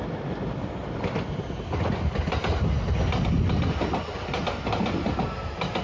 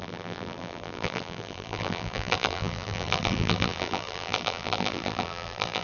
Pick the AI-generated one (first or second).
second